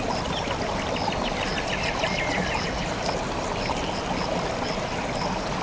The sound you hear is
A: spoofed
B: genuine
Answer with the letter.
B